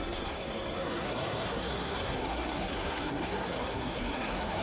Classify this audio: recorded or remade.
remade